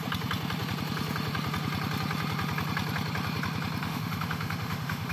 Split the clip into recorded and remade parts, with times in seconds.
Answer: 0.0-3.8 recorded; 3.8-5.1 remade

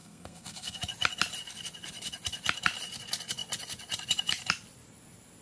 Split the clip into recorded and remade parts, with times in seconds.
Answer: 0.0-0.8 remade; 0.8-5.4 recorded